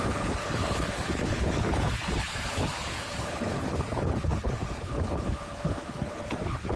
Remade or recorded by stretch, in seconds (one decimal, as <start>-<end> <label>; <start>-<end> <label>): 0.0-6.8 remade